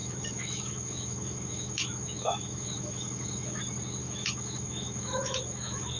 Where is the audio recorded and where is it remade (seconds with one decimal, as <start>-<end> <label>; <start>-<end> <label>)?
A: 0.0-3.6 remade; 3.6-4.0 recorded; 4.0-6.0 remade